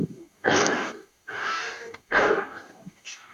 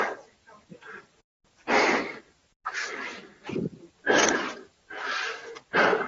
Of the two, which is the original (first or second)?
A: second